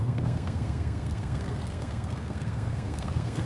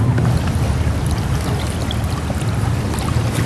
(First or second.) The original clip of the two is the second